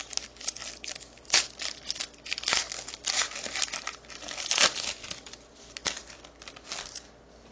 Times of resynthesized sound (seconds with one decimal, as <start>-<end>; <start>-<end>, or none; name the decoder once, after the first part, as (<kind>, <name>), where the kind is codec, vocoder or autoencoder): none